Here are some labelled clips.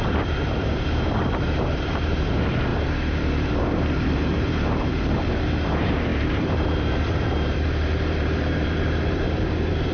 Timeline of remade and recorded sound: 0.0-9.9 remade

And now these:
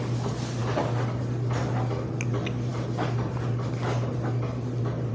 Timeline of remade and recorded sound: 0.0-5.1 recorded

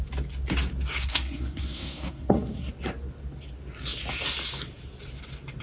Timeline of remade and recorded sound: 0.0-1.0 recorded; 1.0-2.7 remade; 2.7-5.6 recorded